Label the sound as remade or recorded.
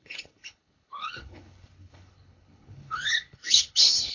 remade